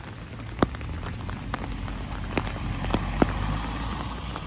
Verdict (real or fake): real